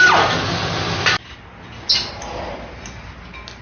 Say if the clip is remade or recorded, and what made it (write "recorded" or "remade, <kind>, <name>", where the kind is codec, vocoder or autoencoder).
recorded